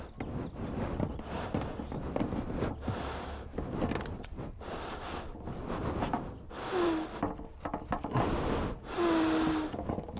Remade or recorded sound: recorded